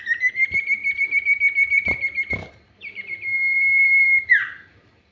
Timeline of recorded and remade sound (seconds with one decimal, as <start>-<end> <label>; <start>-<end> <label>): 0.0-0.8 remade; 0.8-2.3 recorded; 2.3-5.1 remade